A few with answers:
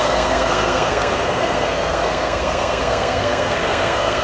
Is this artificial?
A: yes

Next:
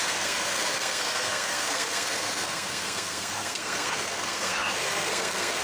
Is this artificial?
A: yes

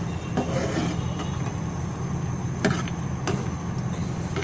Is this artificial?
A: no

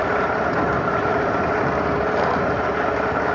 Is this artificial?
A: no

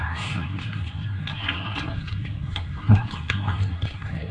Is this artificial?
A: yes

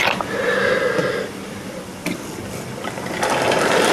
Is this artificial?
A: no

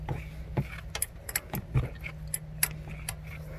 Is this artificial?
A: no